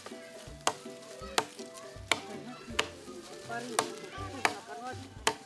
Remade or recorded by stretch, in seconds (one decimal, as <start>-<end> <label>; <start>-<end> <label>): 0.0-5.5 recorded